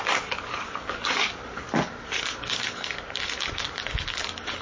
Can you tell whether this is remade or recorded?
remade